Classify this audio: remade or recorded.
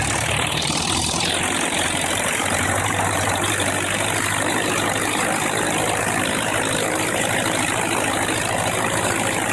remade